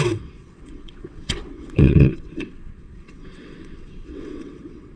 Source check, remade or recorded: remade